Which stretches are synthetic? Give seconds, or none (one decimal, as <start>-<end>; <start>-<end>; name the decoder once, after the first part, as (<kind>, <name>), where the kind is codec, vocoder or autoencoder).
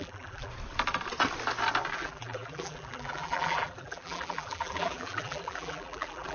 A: 0.0-0.5 (vocoder, BigVGAN v2); 1.9-6.3